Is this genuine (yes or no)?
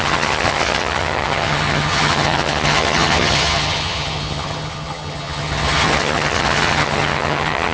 no